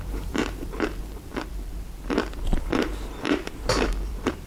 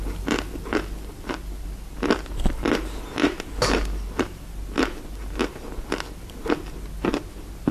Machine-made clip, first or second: first